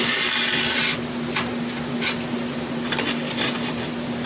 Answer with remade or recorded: recorded